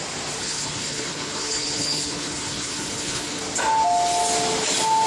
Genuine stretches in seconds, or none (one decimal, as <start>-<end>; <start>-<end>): 0.0-0.4; 3.4-5.1